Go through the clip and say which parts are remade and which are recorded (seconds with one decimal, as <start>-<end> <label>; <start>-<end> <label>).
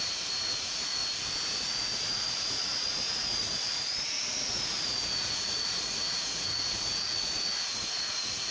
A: 0.0-1.0 remade; 1.0-1.6 recorded; 1.6-8.5 remade